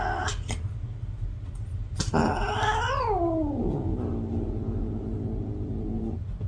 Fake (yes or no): no